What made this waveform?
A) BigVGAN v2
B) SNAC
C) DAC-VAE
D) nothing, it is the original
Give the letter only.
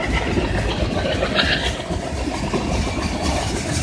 D